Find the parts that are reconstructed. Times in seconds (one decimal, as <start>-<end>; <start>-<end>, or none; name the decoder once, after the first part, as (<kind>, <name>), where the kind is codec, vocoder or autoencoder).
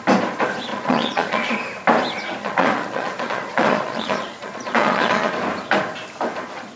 0.7-1.6 (vocoder, Vocos); 2.4-5.3